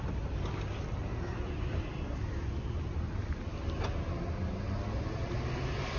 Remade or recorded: recorded